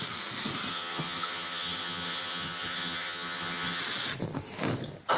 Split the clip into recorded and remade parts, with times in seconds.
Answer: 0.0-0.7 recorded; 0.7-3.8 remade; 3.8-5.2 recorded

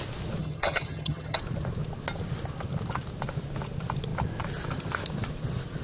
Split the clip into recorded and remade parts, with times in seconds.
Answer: 0.0-0.4 recorded; 0.4-1.4 remade; 1.4-5.8 recorded

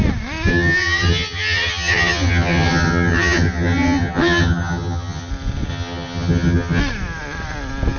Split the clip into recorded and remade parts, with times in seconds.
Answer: 0.0-0.5 recorded; 0.5-5.3 remade; 5.3-5.7 recorded; 5.7-6.8 remade; 6.8-8.0 recorded

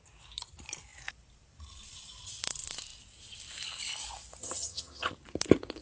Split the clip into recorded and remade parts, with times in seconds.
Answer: 0.0-4.4 recorded; 4.4-5.1 remade; 5.1-5.8 recorded

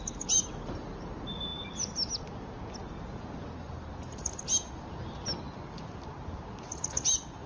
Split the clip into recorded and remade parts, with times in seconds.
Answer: 0.0-7.5 recorded

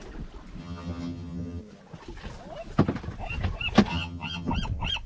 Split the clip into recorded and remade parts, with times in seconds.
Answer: 0.0-0.6 recorded; 0.6-1.6 remade; 1.6-3.9 recorded; 3.9-4.5 remade; 4.5-5.1 recorded